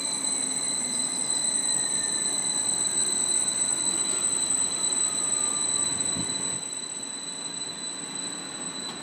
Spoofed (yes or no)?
no